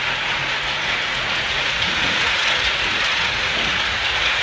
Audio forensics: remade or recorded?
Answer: remade